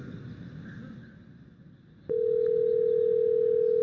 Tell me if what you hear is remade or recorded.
recorded